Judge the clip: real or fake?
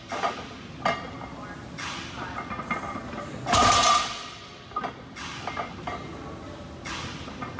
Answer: real